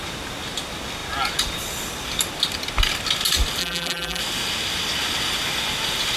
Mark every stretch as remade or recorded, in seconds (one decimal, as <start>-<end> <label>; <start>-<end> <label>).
0.0-3.6 recorded; 3.6-4.2 remade; 4.2-6.2 recorded